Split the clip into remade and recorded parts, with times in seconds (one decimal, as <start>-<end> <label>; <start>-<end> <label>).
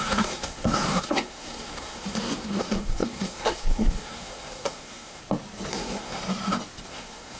0.0-5.2 remade; 5.2-5.7 recorded; 5.7-6.2 remade; 6.2-6.9 recorded; 6.9-7.4 remade